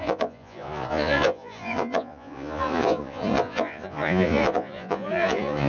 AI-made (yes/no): yes